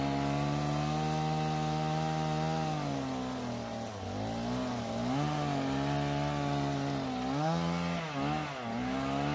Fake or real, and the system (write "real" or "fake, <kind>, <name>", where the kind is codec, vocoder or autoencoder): real